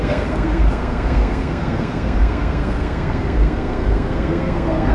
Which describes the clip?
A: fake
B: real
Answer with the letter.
A